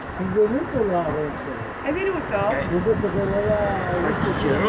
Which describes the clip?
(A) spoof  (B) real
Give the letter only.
B